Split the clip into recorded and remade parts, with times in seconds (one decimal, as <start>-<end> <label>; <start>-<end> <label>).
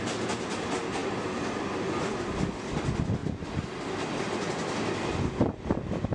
0.0-6.1 recorded